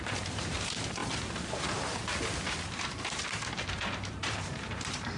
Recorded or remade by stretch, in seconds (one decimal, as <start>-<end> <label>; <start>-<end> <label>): 0.0-1.0 remade; 1.0-4.1 recorded; 4.1-5.2 remade